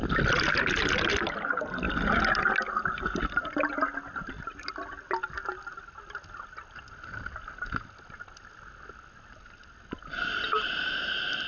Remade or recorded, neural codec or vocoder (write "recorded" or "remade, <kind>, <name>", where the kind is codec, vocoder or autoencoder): recorded